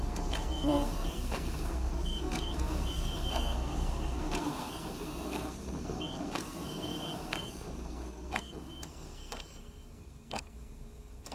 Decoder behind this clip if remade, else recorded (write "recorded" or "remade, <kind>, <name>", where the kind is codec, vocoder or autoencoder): remade, codec, SNAC